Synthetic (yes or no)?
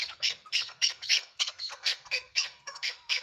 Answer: yes